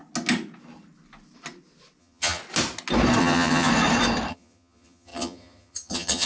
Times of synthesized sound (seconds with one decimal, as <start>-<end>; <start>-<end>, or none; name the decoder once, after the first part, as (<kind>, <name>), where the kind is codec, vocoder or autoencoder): 2.0-2.4 (vocoder, HiFi-GAN); 3.2-3.7; 4.3-6.3